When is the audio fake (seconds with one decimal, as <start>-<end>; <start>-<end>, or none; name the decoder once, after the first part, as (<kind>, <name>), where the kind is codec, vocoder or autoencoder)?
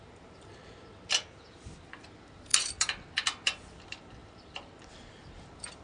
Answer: 0.0-0.5 (vocoder, BigVGAN v2); 1.1-5.8